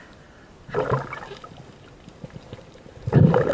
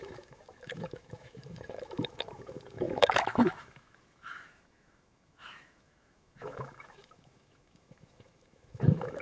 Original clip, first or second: first